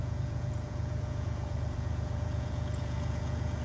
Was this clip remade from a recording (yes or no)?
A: yes